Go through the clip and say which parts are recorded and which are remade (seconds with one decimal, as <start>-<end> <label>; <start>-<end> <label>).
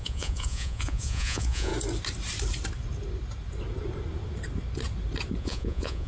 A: 0.0-1.7 remade; 1.7-5.4 recorded; 5.4-6.1 remade